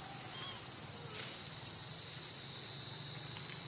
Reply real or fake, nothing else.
real